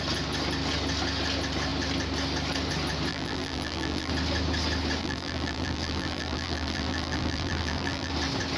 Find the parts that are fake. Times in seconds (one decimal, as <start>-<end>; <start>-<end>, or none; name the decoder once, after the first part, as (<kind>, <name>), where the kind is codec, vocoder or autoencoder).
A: 3.1-4.1 (vocoder, BigVGAN v2); 5.0-8.1